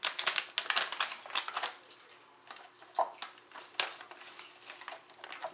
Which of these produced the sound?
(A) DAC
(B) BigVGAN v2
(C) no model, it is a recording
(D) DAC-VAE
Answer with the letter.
C